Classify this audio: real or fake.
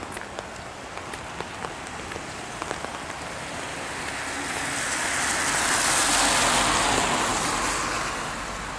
real